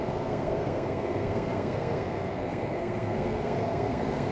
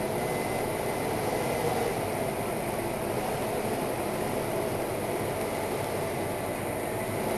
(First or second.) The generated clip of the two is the first